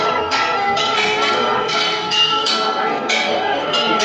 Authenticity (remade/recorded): remade